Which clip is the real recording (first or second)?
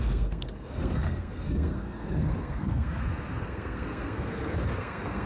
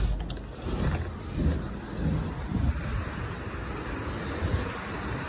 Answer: second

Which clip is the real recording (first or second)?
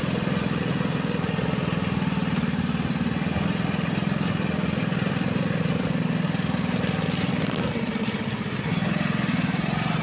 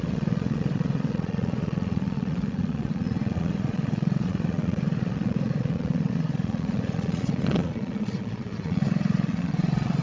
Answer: first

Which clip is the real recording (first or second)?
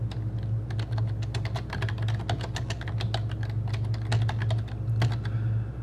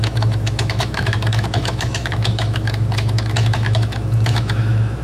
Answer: first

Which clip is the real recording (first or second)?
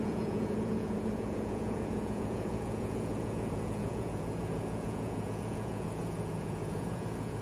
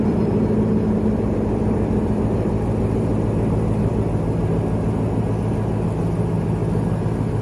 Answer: second